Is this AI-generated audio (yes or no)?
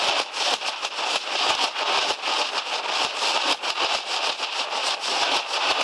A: no